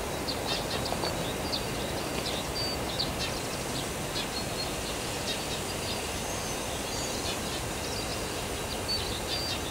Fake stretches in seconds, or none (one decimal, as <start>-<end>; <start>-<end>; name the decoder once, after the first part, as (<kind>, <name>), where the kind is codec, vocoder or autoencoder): none